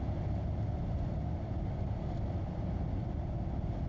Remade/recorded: recorded